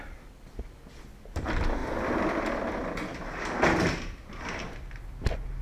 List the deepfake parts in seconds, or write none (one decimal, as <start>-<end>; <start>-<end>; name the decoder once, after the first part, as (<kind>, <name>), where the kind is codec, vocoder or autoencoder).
1.8-2.6 (vocoder, BigVGAN v2); 3.1-4.6